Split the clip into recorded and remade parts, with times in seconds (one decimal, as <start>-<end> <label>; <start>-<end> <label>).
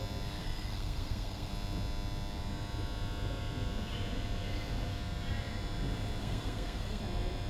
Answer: 0.0-0.4 recorded; 0.4-1.5 remade; 1.5-6.2 recorded; 6.2-7.0 remade; 7.0-7.5 recorded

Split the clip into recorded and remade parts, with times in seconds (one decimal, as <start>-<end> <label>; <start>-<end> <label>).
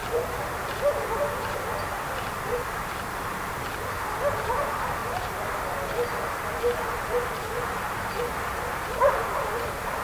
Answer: 0.0-2.8 remade; 2.8-10.0 recorded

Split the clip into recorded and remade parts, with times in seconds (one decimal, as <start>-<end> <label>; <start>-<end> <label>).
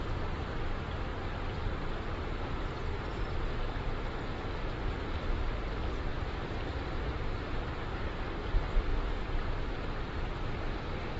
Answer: 0.0-4.8 recorded; 4.8-5.4 remade; 5.4-6.1 recorded; 6.1-7.1 remade; 7.1-8.9 recorded; 8.9-10.6 remade; 10.6-11.2 recorded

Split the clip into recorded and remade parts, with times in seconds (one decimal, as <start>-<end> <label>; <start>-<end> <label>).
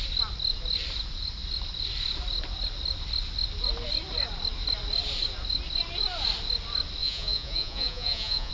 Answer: 0.0-7.0 recorded; 7.0-8.5 remade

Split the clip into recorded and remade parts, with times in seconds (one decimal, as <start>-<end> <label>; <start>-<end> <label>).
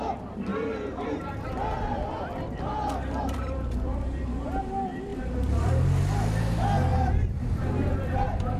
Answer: 0.0-0.5 recorded; 0.5-4.6 remade; 4.6-5.1 recorded; 5.1-5.7 remade; 5.7-6.9 recorded; 6.9-7.4 remade; 7.4-8.6 recorded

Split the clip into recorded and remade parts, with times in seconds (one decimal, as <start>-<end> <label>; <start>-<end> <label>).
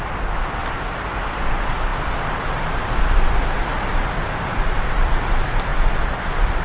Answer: 0.0-6.6 recorded